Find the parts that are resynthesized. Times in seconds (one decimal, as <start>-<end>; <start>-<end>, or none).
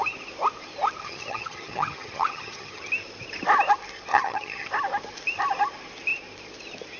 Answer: 1.0-2.9; 4.1-4.7